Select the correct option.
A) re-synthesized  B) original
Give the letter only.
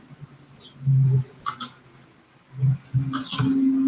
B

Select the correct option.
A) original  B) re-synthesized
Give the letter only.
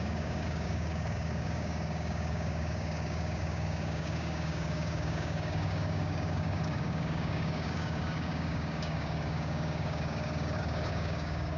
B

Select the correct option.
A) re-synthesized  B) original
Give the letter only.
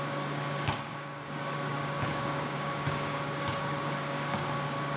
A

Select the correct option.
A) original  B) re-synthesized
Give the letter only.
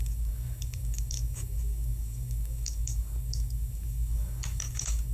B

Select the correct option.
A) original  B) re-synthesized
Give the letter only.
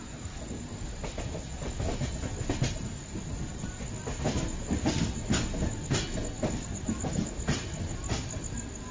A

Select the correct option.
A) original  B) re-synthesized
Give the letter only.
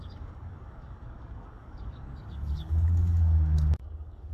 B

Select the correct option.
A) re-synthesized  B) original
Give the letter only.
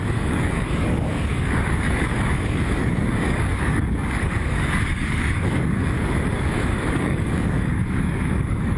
A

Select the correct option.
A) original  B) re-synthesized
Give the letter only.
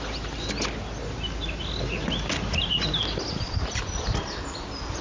A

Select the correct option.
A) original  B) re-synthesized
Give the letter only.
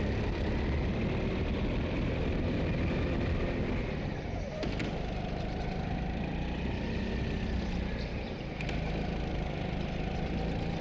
A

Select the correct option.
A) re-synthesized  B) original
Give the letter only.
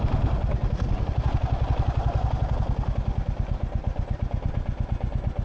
B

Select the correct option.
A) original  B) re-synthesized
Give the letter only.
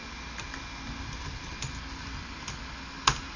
A